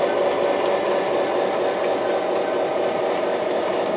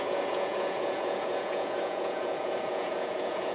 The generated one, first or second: second